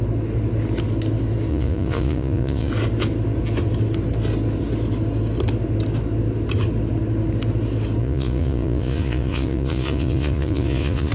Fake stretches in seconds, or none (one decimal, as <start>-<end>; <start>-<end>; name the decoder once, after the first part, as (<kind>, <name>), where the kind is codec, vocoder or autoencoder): 1.5-2.7 (vocoder, Vocos); 8.0-11.1